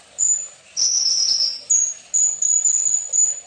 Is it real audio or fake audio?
real